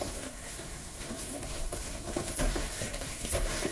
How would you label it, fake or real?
fake